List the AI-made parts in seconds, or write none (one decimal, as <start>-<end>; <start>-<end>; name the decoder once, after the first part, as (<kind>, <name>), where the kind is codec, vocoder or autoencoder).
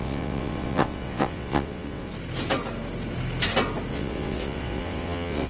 0.0-2.1 (vocoder, WaveNeXt); 3.9-5.5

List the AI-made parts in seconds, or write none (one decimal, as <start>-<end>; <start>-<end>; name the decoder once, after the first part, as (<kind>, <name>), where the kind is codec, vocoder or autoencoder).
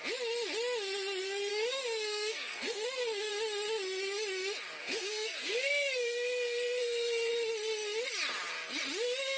1.5-3.3 (codec, SNAC); 4.8-7.3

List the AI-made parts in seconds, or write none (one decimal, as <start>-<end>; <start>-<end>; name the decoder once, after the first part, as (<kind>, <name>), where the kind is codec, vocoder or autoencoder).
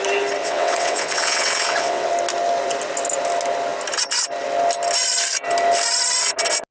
0.4-2.1 (vocoder, WaveNeXt)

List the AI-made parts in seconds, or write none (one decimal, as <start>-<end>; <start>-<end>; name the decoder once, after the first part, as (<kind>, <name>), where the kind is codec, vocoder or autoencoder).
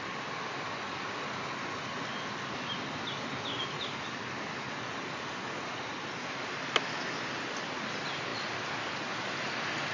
none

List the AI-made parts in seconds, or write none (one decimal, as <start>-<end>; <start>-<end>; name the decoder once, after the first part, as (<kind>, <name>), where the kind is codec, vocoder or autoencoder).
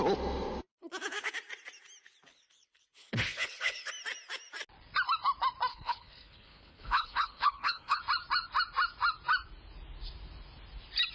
0.7-1.3 (codec, HILCodec); 2.3-3.9; 5.7-8.0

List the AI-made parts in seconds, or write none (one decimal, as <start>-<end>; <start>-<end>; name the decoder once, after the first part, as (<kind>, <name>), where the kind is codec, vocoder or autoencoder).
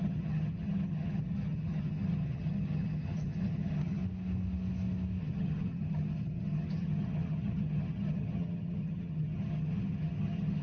0.0-4.0 (vocoder, HiFi-GAN); 5.2-10.6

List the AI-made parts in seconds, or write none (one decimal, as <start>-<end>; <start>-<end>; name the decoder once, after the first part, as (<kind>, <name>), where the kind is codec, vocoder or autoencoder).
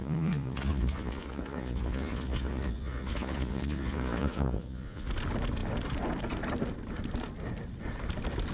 0.0-5.1 (vocoder, Vocos)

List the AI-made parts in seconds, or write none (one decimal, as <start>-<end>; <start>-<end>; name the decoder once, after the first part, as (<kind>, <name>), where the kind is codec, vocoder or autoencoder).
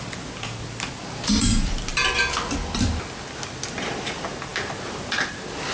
none